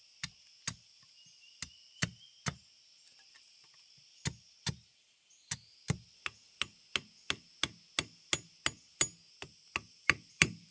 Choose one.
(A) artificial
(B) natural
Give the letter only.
B